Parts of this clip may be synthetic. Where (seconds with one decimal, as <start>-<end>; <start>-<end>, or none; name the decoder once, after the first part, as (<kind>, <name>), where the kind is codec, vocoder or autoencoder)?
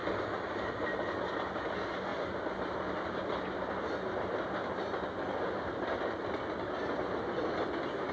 none